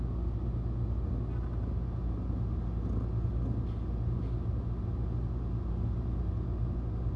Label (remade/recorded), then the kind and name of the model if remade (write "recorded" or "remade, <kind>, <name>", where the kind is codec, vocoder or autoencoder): recorded